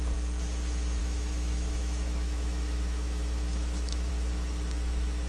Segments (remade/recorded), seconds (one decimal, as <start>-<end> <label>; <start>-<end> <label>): 0.0-1.0 recorded; 1.0-4.1 remade; 4.1-5.3 recorded